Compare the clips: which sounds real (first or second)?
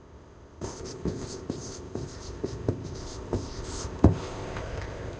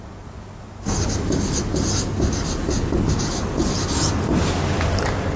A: second